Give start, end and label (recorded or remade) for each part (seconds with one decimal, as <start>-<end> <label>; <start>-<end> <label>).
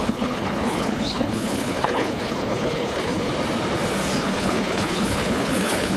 0.0-3.3 remade; 3.3-4.2 recorded; 4.2-6.0 remade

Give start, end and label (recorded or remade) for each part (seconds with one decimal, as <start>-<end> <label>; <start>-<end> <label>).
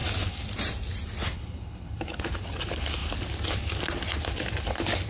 0.0-1.3 recorded; 1.3-2.2 remade; 2.2-5.1 recorded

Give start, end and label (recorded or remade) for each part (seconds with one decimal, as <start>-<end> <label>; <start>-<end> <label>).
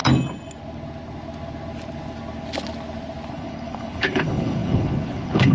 0.0-3.3 recorded; 3.3-5.5 remade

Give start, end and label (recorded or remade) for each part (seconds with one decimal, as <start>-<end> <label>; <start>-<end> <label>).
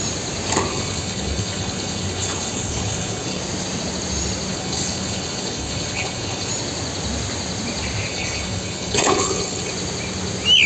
0.0-0.7 recorded; 0.7-3.4 remade; 3.4-4.5 recorded; 4.5-6.5 remade; 6.5-8.1 recorded; 8.1-9.7 remade; 9.7-10.7 recorded